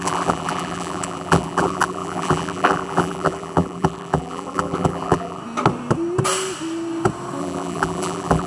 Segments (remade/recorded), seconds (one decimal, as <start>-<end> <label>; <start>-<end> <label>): 0.0-5.4 remade; 5.4-7.4 recorded; 7.4-8.5 remade